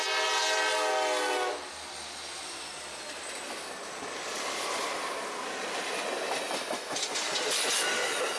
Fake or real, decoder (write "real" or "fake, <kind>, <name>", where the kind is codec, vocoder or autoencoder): real